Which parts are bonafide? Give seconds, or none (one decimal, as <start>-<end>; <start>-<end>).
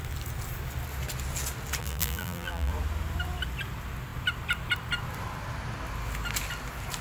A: 0.0-1.8; 2.7-7.0